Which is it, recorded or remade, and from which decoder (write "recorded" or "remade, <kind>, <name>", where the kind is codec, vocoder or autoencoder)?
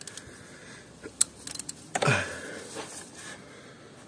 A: recorded